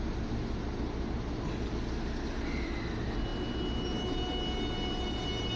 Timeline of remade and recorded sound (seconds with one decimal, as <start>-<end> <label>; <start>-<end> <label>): 0.0-5.6 recorded